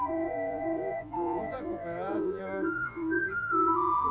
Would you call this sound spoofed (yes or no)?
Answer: yes